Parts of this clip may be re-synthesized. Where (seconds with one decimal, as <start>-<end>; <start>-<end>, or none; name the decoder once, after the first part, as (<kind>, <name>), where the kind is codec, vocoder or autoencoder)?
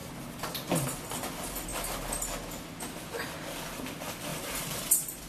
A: 0.0-0.5 (vocoder, BigVGAN v2); 4.3-4.8